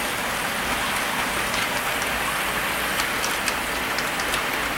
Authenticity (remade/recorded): recorded